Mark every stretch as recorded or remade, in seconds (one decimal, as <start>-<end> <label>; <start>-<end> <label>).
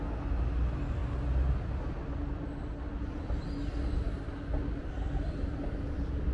0.0-6.3 recorded